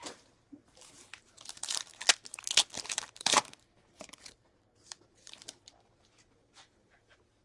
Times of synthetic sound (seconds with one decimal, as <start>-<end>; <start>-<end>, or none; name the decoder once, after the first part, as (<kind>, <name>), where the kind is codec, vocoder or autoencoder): 0.0-1.9 (vocoder, BigVGAN v2); 2.9-7.4